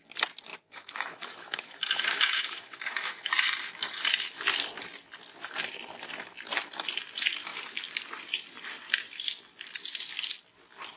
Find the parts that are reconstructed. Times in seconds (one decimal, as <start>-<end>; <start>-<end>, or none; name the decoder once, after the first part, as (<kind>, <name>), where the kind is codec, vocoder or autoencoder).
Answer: 0.5-3.3 (autoencoder, DAC-VAE)